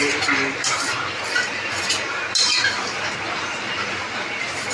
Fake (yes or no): yes